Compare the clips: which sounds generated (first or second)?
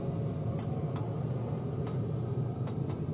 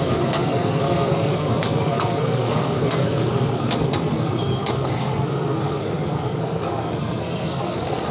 second